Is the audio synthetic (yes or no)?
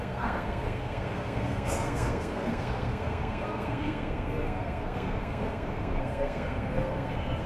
yes